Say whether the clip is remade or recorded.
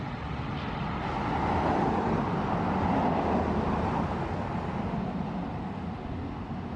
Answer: recorded